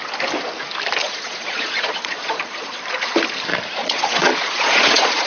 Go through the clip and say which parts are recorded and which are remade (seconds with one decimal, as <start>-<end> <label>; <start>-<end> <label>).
0.0-1.0 recorded; 1.0-2.8 remade; 2.8-3.8 recorded; 3.8-5.3 remade